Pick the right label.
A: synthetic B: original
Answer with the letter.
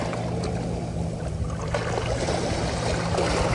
B